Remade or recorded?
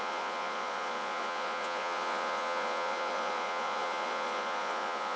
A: remade